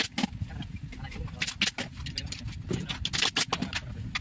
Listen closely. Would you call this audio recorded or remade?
recorded